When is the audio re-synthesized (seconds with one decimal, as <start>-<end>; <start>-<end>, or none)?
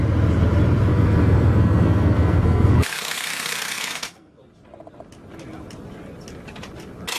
0.9-4.4